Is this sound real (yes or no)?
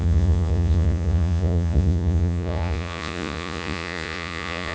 no